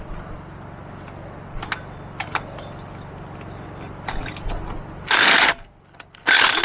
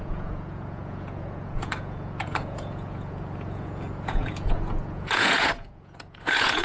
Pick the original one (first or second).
first